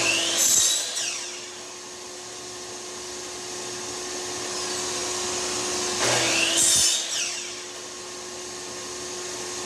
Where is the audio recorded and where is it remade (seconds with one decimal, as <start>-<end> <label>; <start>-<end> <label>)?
0.0-9.7 recorded